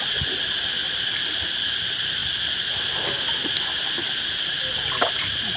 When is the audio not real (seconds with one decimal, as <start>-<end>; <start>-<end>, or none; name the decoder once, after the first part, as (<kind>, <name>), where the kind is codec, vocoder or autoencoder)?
none

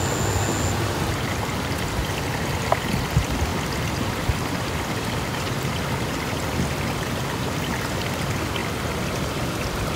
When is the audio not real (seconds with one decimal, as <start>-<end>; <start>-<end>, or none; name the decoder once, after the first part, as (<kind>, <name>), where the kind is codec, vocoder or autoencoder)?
none

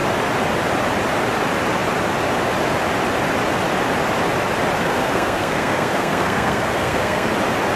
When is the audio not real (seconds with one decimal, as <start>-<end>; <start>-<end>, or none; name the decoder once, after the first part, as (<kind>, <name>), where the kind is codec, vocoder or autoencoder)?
4.8-7.3 (codec, SNAC)